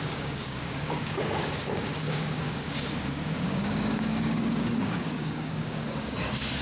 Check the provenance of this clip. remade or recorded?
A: remade